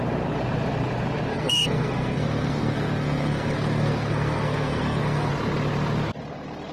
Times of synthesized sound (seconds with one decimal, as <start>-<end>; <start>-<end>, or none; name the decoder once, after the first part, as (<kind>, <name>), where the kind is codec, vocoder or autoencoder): 1.3-5.3 (codec, SNAC)